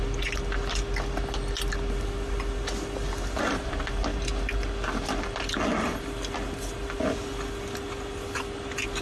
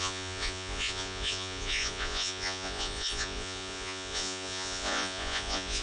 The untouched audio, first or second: first